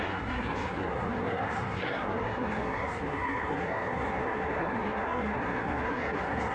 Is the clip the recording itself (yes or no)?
no